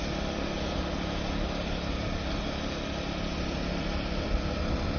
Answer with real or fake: real